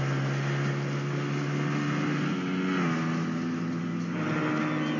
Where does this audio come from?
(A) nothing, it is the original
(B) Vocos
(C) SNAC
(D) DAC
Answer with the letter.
A